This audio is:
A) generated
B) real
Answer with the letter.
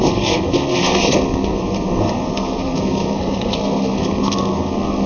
A